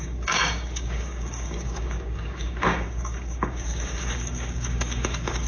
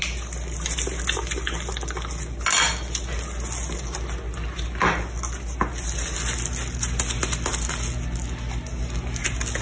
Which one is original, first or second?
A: second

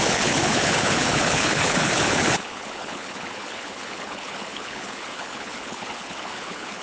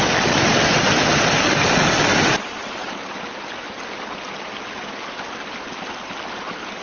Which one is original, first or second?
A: second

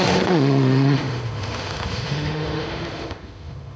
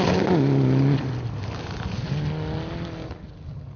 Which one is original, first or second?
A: second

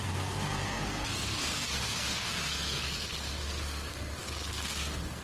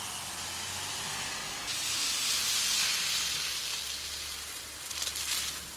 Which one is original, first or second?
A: second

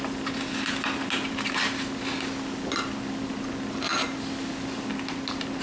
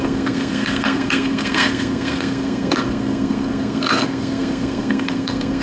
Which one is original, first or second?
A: first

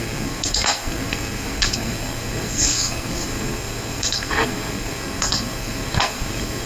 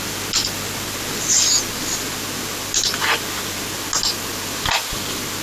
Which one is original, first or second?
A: second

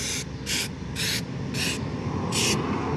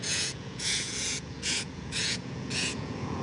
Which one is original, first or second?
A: first